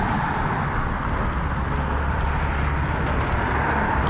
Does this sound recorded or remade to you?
remade